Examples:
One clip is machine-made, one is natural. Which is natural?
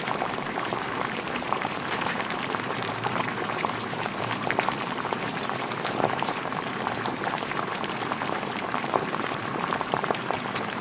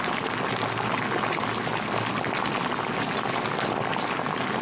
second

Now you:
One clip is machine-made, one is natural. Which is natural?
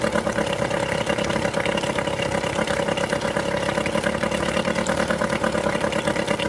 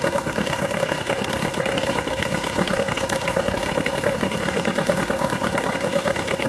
first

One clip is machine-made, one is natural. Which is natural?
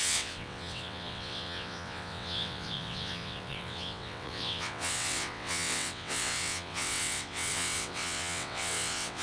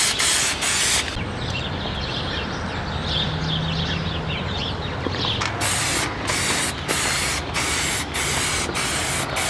second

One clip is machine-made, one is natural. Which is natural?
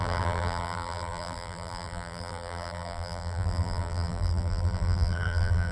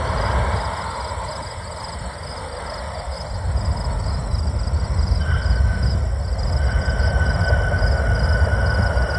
second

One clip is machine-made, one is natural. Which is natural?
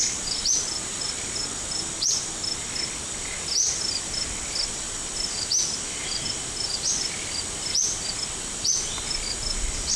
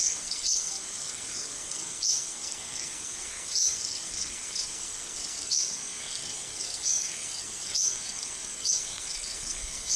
first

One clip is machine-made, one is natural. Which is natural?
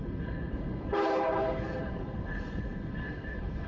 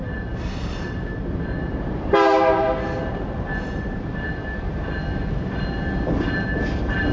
second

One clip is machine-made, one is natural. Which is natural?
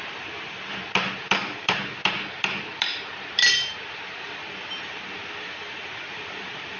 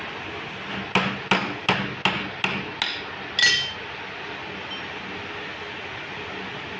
second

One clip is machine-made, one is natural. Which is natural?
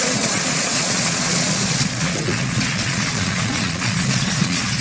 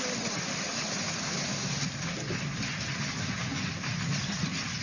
second